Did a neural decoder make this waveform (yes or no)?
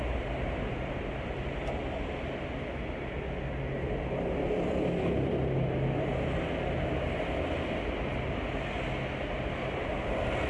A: no